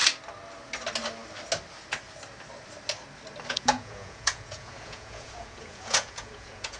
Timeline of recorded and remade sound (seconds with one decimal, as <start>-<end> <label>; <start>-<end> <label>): 0.0-3.5 recorded; 3.5-6.8 remade